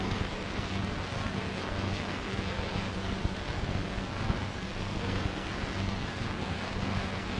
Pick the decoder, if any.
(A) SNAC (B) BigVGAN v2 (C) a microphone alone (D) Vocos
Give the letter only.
A